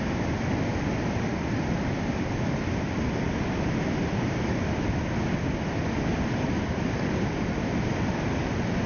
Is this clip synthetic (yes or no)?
no